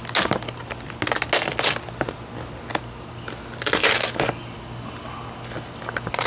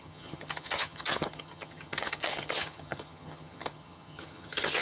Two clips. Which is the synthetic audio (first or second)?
second